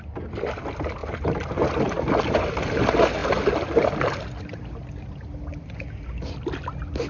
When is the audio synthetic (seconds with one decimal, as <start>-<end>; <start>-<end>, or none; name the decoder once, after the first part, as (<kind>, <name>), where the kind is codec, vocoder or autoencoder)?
none